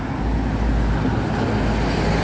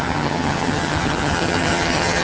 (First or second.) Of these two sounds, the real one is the first